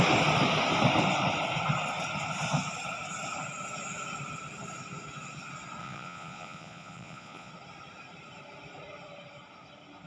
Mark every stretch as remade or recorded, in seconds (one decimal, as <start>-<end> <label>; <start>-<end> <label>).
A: 0.0-5.8 recorded; 5.8-7.5 remade; 7.5-10.1 recorded